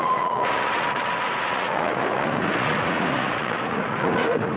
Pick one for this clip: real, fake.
fake